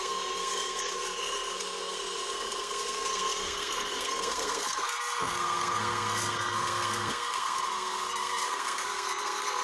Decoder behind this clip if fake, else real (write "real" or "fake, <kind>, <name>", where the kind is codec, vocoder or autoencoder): fake, codec, SNAC